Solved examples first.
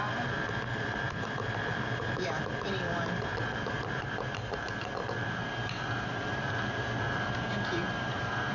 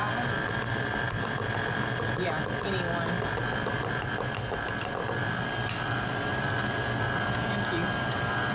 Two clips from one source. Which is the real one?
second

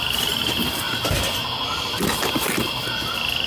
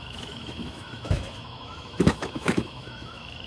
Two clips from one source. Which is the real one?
first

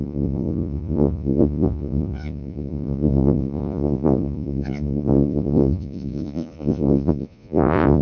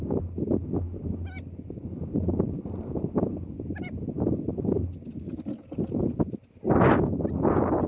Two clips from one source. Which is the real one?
second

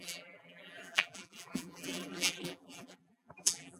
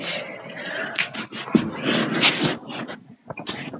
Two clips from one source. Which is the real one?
second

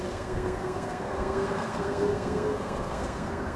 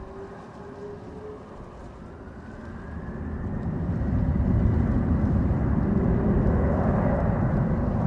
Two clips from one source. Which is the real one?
second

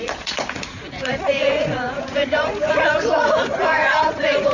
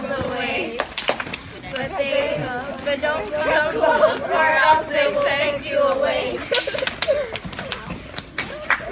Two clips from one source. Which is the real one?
second